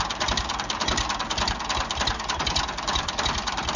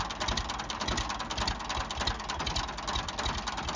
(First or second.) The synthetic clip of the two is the first